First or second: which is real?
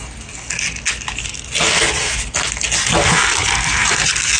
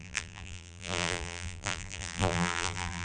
first